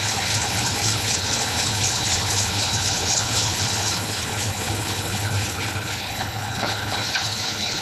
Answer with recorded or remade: remade